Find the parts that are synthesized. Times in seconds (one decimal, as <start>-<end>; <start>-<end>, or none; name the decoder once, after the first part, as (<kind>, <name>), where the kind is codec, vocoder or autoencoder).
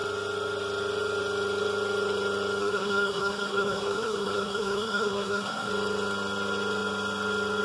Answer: 2.6-5.7 (codec, SNAC)